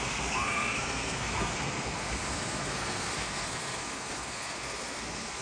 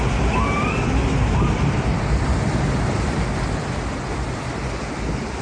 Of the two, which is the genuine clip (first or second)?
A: second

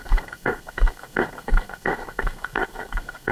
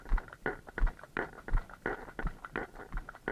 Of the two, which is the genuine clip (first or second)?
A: second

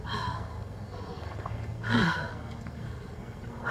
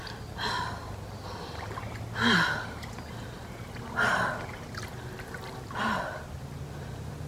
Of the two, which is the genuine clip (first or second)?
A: second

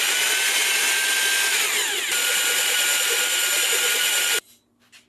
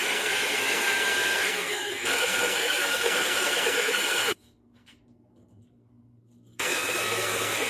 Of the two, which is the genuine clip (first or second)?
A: first